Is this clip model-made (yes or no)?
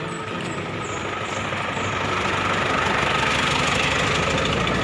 no